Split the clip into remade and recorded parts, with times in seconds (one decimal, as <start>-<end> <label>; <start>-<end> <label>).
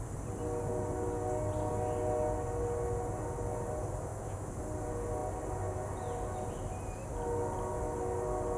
0.0-4.1 recorded; 4.1-4.6 remade; 4.6-8.6 recorded